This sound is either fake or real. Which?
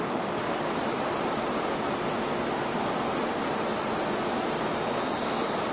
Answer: real